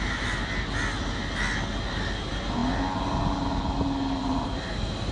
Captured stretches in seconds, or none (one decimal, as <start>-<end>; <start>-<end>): 0.0-5.1